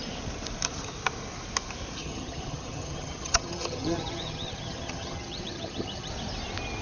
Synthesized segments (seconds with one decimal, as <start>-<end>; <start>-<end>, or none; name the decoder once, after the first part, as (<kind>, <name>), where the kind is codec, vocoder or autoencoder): 2.0-6.1 (vocoder, HiFi-GAN)